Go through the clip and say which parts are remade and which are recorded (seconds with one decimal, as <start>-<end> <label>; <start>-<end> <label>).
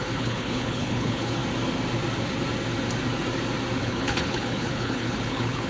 0.0-1.4 remade; 1.4-3.8 recorded; 3.8-5.7 remade